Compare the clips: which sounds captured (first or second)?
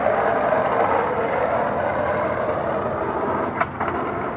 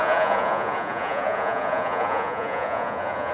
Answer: first